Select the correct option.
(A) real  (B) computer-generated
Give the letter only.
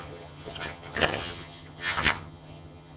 B